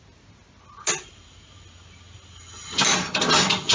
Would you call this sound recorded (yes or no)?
yes